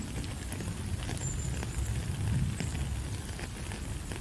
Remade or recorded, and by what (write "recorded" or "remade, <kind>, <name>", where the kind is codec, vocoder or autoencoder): recorded